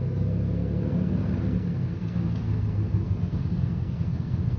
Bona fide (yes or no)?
no